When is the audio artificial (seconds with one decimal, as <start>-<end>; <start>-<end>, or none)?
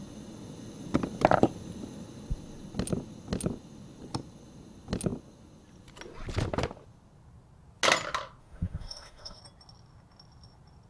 8.4-9.4